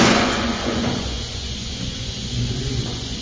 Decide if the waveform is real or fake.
fake